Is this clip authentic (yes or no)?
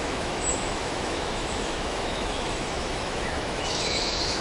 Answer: no